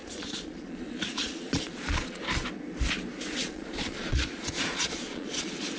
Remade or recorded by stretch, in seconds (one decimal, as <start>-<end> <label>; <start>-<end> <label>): 0.0-2.2 remade; 2.2-3.4 recorded; 3.4-5.8 remade